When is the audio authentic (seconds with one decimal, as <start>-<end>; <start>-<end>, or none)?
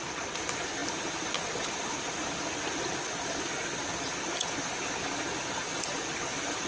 0.0-6.7